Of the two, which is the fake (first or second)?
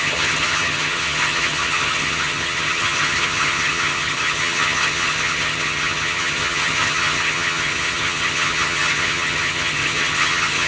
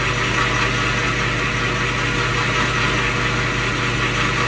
first